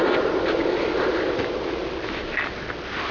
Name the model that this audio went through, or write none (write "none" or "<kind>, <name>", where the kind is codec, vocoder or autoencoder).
none